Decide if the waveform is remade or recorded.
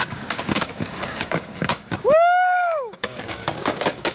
remade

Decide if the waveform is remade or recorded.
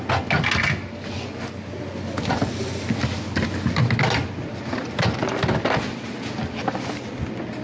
recorded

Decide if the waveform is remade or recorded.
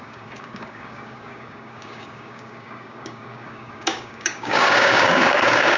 remade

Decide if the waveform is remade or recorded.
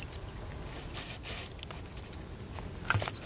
recorded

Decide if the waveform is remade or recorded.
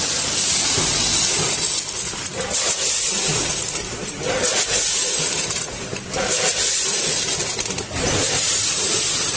recorded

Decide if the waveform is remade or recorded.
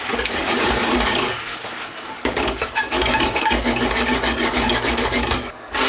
remade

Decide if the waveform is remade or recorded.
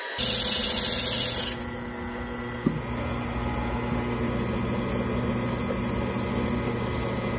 recorded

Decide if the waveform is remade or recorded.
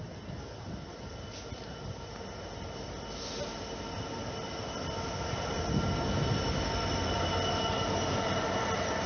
recorded